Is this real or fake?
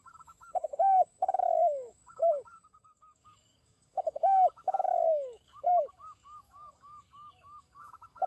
fake